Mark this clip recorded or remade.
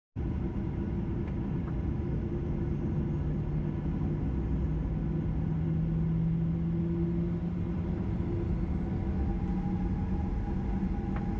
recorded